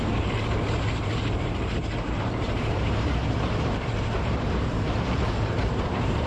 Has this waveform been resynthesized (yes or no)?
yes